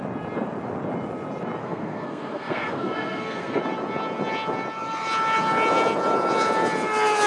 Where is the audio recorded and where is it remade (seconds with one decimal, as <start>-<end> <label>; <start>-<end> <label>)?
0.0-1.6 recorded; 1.6-3.6 remade; 3.6-7.3 recorded

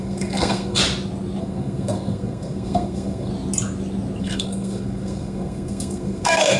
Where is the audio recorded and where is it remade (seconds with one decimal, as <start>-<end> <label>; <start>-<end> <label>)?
0.0-0.8 remade; 0.8-1.4 recorded; 1.4-3.3 remade; 3.3-4.2 recorded; 4.2-6.6 remade